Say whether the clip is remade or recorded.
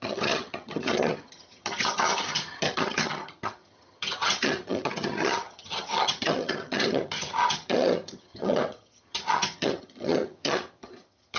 remade